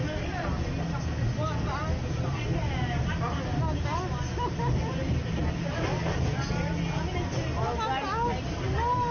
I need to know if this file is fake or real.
real